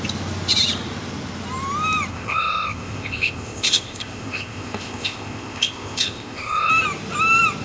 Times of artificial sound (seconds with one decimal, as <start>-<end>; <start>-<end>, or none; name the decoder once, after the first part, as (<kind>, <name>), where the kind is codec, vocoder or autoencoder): 2.1-6.7 (codec, ZipCodec)